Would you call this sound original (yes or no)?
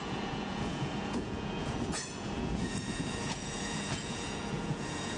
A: no